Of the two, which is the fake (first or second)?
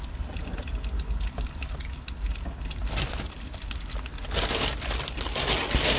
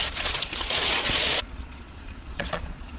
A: second